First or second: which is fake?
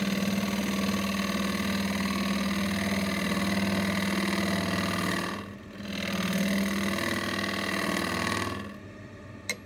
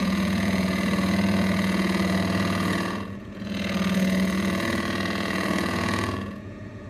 second